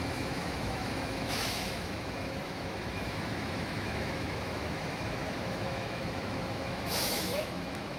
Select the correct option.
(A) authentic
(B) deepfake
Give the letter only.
B